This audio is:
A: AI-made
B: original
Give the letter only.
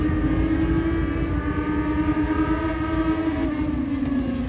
B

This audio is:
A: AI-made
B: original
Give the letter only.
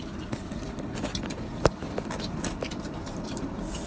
A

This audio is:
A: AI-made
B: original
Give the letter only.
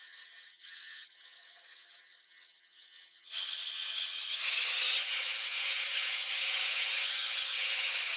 A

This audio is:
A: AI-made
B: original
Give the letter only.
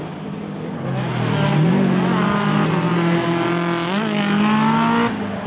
B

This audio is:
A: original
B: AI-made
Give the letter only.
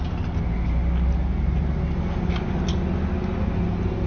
A